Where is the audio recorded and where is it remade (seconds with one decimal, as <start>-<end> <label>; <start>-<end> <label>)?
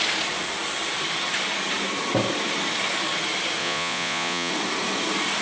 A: 0.0-3.6 recorded; 3.6-4.5 remade; 4.5-5.4 recorded